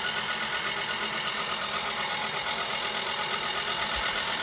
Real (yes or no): yes